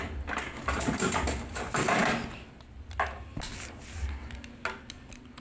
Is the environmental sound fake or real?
real